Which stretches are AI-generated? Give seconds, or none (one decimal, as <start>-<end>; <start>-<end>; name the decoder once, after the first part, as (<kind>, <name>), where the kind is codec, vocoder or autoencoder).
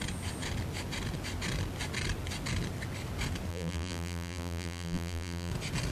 3.5-5.5 (vocoder, BigVGAN v2)